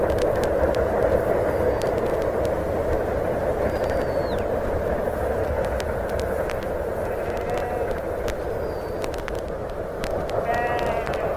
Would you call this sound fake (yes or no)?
no